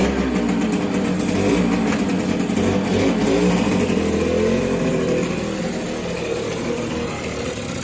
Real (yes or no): yes